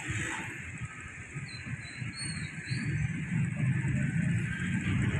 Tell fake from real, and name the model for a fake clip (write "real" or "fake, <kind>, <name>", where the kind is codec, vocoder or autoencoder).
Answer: real